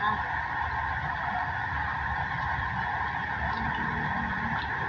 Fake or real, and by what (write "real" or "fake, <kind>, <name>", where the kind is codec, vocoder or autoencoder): real